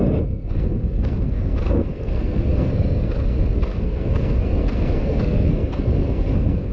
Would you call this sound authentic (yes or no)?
no